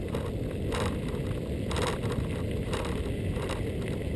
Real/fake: real